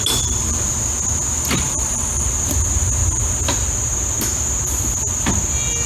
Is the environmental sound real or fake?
real